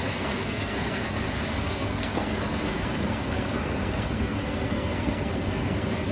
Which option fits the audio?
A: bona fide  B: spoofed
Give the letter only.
B